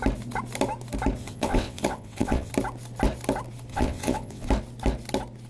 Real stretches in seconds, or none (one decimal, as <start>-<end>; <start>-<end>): 0.0-1.2; 2.5-3.7; 4.5-5.5

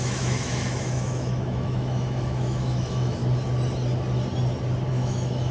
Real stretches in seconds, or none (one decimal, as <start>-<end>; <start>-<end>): 3.2-4.9

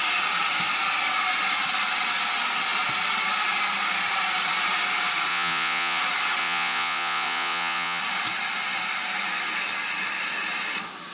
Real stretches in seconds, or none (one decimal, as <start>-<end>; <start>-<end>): 0.0-5.3; 6.0-6.4; 8.0-11.1

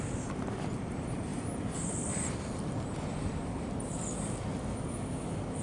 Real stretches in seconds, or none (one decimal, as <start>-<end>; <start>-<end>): 0.0-1.3; 4.0-5.6

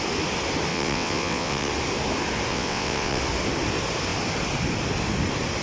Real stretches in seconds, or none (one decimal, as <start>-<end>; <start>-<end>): 0.0-0.7; 1.7-2.5; 3.2-5.6

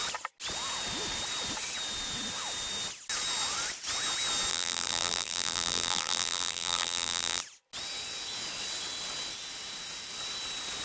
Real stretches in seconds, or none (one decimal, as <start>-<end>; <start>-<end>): 0.0-4.5; 7.4-10.8